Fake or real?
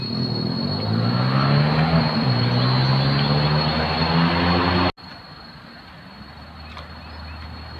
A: real